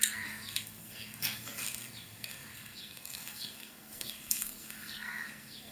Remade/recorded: remade